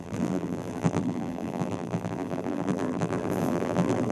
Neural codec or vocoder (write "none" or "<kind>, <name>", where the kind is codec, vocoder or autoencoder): vocoder, BigVGAN v2